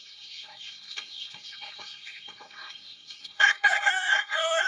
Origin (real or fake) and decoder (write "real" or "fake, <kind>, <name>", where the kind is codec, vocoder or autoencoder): fake, codec, SNAC